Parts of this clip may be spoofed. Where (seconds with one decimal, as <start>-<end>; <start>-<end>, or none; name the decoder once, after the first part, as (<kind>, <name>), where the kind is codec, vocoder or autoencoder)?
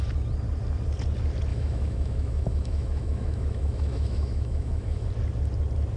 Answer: 1.5-5.1 (autoencoder, DAC-VAE)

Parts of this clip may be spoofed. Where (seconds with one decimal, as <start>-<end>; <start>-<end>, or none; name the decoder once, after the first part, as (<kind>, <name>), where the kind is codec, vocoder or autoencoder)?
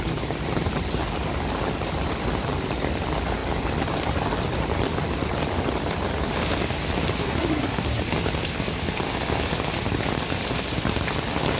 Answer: 7.2-8.0 (codec, SNAC)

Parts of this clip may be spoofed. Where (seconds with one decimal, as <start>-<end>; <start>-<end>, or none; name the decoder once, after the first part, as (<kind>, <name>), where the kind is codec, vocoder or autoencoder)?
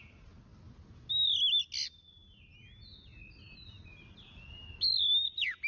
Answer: none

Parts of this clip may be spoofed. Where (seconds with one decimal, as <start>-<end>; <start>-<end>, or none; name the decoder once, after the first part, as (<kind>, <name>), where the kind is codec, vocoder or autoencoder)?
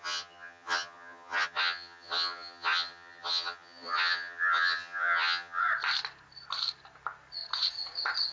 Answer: 0.0-5.6 (vocoder, HiFi-GAN)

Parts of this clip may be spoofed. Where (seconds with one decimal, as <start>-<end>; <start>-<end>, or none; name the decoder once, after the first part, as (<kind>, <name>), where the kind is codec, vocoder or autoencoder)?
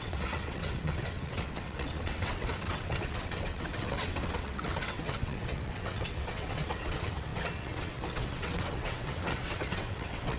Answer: 0.0-10.4 (vocoder, WaveNeXt)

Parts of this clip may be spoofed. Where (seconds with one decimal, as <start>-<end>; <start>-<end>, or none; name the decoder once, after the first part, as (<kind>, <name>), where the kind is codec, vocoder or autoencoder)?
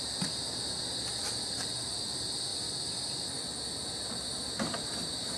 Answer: 0.0-2.5 (vocoder, BigVGAN v2); 3.1-5.4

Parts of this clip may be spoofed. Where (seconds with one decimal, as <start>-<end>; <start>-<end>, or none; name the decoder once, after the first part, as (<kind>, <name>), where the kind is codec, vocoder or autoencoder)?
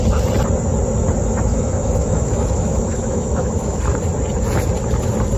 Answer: 1.5-3.8 (autoencoder, DAC-VAE)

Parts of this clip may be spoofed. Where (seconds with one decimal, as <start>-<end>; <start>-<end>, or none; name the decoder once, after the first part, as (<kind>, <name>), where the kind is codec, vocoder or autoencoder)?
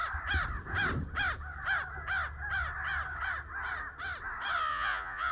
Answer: 4.7-5.3 (vocoder, Vocos)